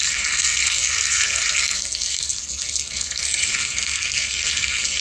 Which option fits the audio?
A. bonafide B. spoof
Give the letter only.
B